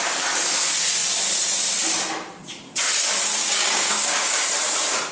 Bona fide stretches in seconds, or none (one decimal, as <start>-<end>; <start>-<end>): 0.0-3.4; 4.4-5.1